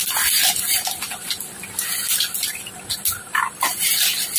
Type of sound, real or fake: real